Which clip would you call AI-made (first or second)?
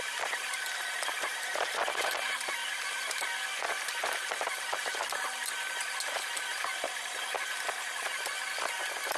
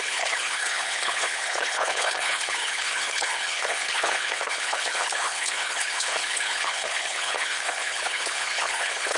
second